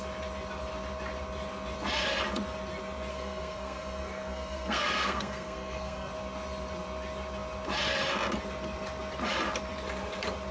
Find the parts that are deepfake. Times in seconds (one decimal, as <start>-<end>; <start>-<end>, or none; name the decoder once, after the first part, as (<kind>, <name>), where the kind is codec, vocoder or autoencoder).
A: 3.1-6.1 (codec, SNAC)